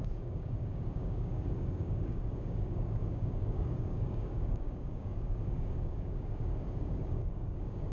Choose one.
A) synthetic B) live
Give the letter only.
A